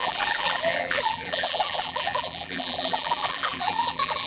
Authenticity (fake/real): fake